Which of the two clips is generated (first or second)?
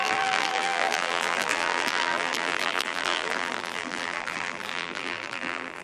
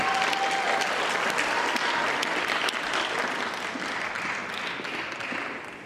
first